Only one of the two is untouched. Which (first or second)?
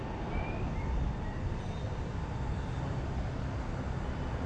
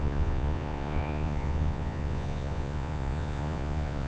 first